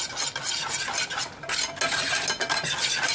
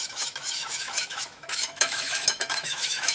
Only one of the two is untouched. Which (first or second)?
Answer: first